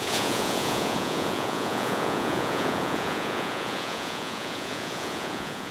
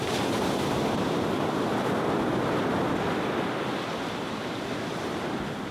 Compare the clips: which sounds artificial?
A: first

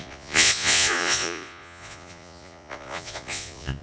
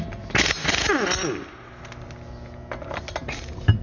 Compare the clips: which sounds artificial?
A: first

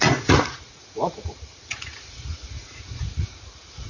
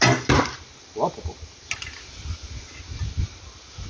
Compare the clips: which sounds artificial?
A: first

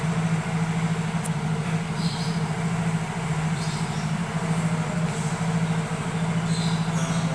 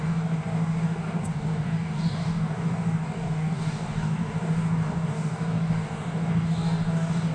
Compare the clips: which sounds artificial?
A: second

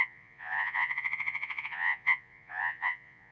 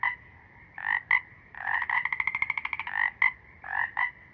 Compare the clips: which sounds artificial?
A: first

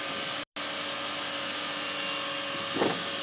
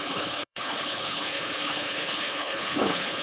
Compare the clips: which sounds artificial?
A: second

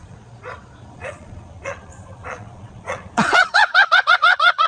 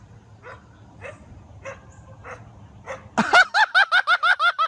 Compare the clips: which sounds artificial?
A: first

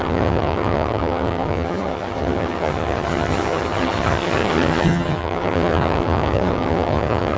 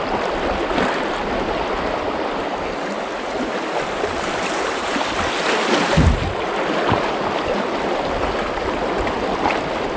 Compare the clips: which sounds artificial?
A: first